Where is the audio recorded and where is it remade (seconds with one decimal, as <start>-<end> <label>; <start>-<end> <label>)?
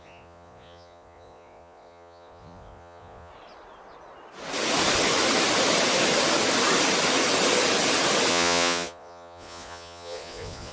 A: 0.0-3.3 remade; 3.3-8.3 recorded; 8.3-10.7 remade